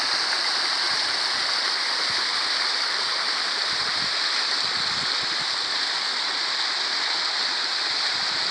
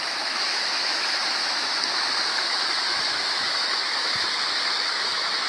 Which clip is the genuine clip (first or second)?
first